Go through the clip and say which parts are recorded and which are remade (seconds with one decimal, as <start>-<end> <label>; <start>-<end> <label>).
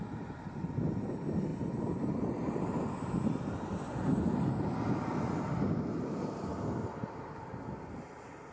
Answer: 0.0-8.5 recorded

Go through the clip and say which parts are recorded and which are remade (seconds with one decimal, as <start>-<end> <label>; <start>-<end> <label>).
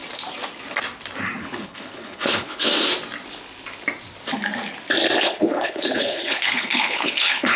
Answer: 0.0-1.4 recorded; 1.4-2.7 remade; 2.7-5.2 recorded; 5.2-7.6 remade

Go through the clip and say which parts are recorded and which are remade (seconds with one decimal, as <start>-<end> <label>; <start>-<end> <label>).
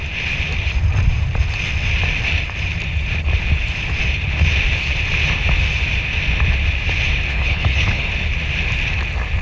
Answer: 0.0-7.3 recorded; 7.3-8.1 remade; 8.1-9.4 recorded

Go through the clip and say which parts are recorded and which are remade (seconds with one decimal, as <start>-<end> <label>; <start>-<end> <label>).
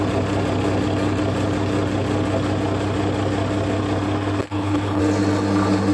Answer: 0.0-4.4 recorded; 4.4-5.0 remade; 5.0-5.9 recorded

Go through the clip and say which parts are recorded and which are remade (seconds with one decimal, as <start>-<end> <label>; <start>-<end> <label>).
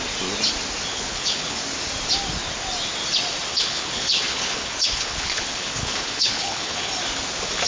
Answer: 0.0-0.9 recorded; 0.9-1.6 remade; 1.6-3.5 recorded; 3.5-6.9 remade; 6.9-7.7 recorded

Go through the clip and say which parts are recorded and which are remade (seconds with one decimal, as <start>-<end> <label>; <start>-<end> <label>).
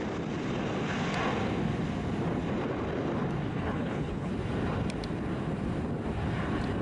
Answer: 0.0-3.5 recorded; 3.5-4.3 remade; 4.3-6.8 recorded